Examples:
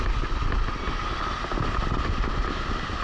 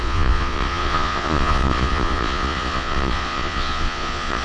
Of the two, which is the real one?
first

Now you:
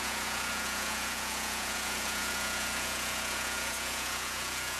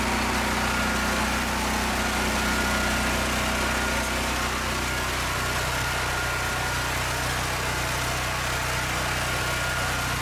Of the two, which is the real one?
second